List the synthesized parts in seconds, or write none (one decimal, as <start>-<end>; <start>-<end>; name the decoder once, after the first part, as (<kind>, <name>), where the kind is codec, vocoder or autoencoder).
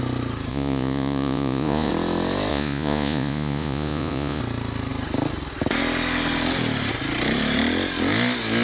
0.5-1.9 (vocoder, Vocos); 2.5-4.4